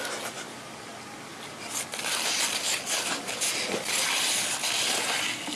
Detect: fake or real real